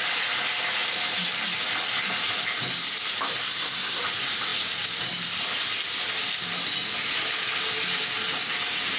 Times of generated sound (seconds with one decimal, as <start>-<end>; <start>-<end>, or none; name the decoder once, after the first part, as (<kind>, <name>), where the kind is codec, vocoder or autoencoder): 3.4-4.0 (codec, SNAC)